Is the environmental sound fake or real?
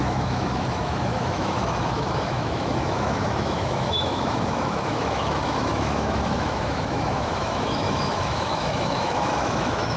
fake